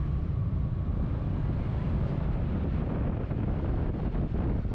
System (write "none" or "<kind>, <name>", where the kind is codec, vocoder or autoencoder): vocoder, BigVGAN v2